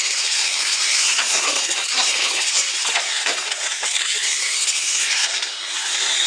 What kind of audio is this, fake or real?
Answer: fake